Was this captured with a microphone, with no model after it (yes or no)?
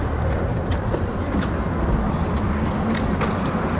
yes